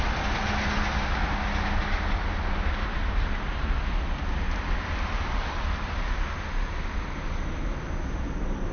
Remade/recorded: recorded